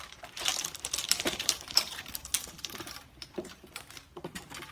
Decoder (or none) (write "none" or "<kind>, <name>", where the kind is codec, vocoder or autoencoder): vocoder, BigVGAN v2